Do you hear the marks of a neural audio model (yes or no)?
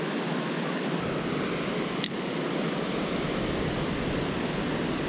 no